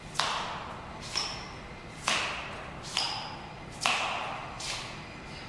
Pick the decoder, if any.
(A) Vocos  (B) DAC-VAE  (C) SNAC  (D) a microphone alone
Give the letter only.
D